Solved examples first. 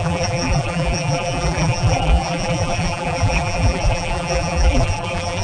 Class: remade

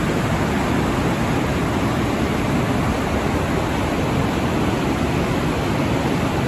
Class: recorded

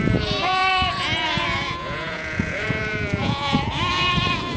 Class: remade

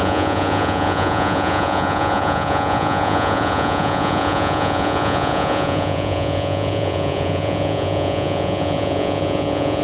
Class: remade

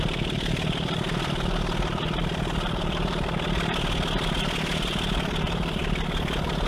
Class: remade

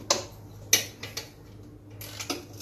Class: recorded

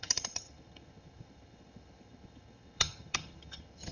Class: remade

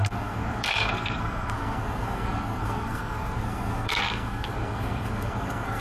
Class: remade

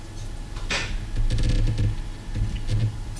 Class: recorded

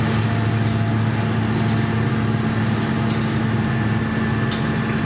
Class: recorded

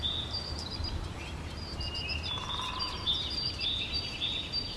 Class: recorded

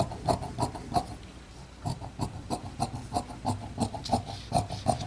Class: recorded